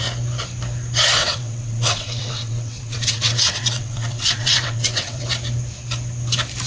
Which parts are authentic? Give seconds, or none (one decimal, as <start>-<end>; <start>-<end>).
0.0-1.2; 5.2-6.7